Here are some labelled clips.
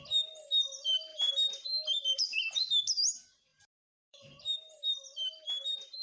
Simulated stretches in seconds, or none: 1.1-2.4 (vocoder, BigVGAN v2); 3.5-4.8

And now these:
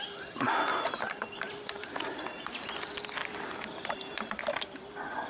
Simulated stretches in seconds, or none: 0.7-2.6 (vocoder, BigVGAN v2); 3.2-4.3

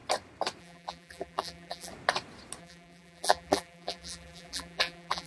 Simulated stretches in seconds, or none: 0.6-1.9 (vocoder, BigVGAN v2); 2.6-5.3

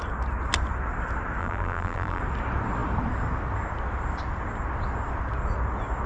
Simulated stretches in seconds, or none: 1.4-2.2 (vocoder, BigVGAN v2)

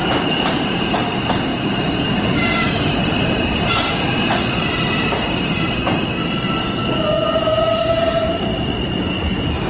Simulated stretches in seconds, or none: 0.0-1.1 (vocoder, BigVGAN v2); 1.5-6.7

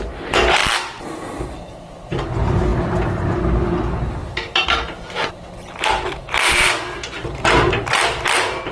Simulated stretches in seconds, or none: 4.2-8.2 (vocoder, BigVGAN v2)

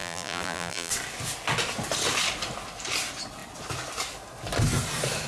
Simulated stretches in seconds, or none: 0.0-0.9 (vocoder, BigVGAN v2)

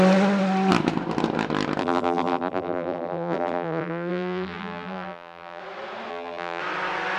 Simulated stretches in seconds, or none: 1.8-5.6 (vocoder, BigVGAN v2); 6.1-6.6